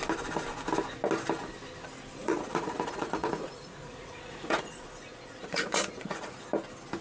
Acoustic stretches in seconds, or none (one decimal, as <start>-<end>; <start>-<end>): 0.0-2.2; 6.4-7.0